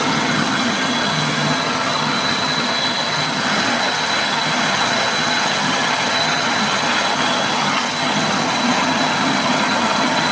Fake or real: fake